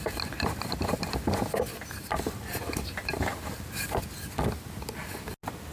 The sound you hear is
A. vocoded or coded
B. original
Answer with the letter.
B